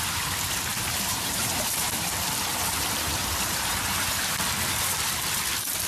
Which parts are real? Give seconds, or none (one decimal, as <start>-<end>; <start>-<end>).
0.0-0.7; 2.1-2.5; 4.4-5.9